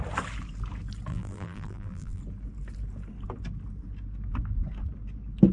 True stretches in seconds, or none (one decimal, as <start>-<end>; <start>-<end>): 0.0-1.1; 2.2-5.5